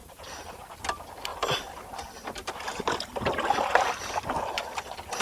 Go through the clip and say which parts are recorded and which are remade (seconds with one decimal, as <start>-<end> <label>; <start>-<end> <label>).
0.0-0.7 remade; 0.7-1.3 recorded; 1.3-4.4 remade; 4.4-5.2 recorded